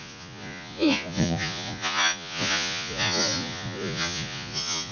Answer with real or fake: fake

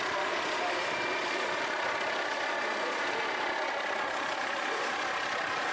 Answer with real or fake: real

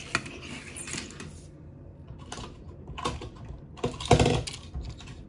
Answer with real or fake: real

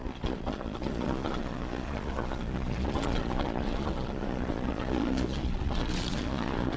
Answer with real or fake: fake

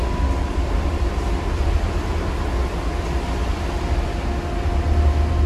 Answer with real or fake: real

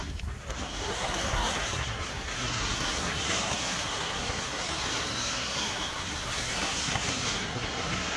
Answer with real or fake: fake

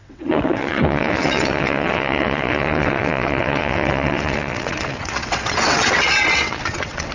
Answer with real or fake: fake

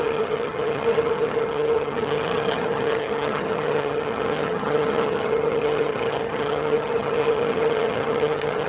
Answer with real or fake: fake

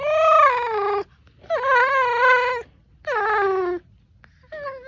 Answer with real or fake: real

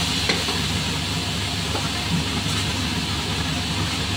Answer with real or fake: real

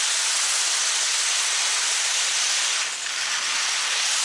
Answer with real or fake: real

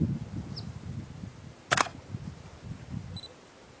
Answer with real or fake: real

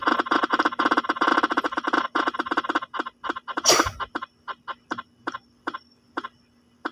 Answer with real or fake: fake